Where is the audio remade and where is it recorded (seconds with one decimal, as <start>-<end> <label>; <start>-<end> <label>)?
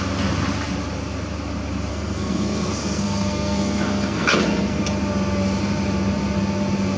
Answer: 0.0-1.9 recorded; 1.9-4.8 remade; 4.8-7.0 recorded